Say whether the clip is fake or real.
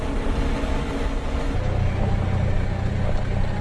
real